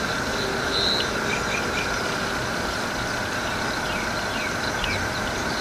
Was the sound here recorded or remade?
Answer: recorded